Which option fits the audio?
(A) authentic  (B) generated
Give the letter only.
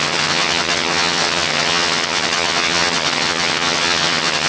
B